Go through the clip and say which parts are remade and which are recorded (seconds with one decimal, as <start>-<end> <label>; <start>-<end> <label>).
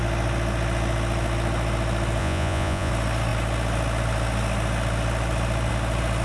0.0-2.2 recorded; 2.2-2.9 remade; 2.9-6.2 recorded